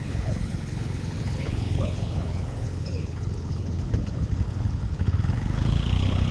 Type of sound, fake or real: fake